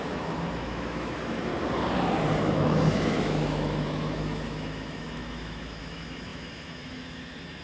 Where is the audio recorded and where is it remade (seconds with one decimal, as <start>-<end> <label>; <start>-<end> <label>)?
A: 0.0-1.5 remade; 1.5-2.4 recorded; 2.4-7.6 remade